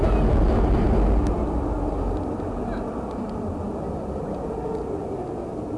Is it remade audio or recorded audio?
recorded